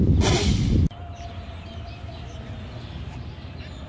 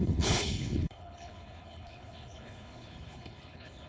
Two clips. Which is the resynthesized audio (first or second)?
second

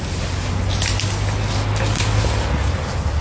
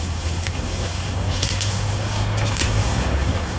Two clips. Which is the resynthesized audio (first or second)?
second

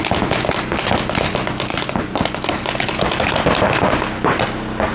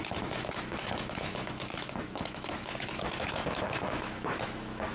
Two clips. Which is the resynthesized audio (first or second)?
second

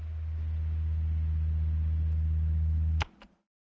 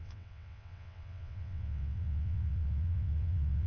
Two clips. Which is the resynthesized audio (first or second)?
second